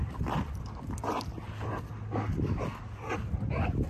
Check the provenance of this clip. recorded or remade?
recorded